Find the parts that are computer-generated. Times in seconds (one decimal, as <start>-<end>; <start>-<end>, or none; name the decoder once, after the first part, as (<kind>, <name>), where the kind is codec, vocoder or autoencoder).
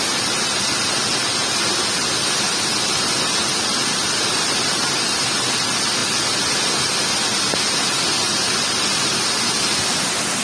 none